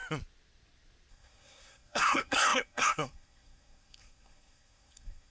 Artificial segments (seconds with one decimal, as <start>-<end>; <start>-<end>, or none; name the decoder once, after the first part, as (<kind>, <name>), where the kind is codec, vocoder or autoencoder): 1.1-5.3 (codec, SNAC)

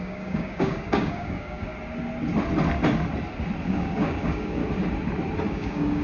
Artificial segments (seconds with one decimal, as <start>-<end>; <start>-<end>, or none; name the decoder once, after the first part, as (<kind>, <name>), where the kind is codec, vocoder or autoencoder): 0.0-1.7 (codec, DAC); 3.6-4.6; 5.5-6.0

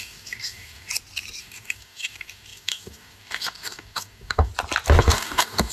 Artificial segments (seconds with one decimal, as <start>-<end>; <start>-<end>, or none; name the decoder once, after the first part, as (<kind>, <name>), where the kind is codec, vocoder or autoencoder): 0.0-0.9 (codec, DAC); 1.4-4.5; 5.0-5.7

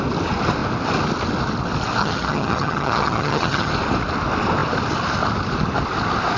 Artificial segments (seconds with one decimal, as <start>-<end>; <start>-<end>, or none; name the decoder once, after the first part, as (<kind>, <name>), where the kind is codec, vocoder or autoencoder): 2.0-3.7 (vocoder, HiFi-GAN)

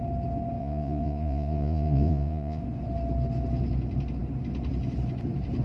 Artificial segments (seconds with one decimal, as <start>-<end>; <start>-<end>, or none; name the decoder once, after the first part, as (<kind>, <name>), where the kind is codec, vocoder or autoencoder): 0.6-2.6 (vocoder, Vocos)

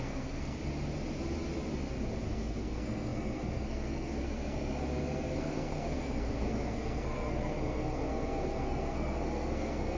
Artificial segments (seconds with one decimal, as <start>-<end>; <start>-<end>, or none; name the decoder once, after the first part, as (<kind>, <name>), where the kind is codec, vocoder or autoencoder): 0.0-0.6 (codec, SNAC); 2.3-10.0